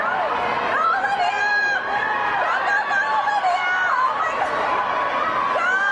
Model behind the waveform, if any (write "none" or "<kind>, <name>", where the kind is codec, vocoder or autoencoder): none